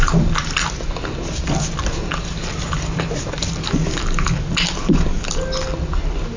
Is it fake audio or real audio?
real